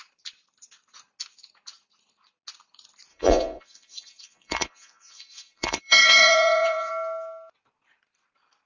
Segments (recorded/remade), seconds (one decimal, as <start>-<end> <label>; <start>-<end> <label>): 0.0-3.1 recorded; 3.1-6.9 remade; 6.9-8.7 recorded